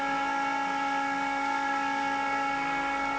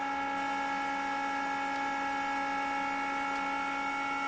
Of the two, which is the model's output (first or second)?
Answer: first